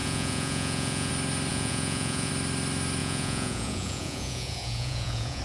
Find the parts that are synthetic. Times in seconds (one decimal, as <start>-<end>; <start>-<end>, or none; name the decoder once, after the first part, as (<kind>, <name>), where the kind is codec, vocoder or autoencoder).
0.0-1.1 (vocoder, Vocos); 1.5-2.3; 3.0-5.4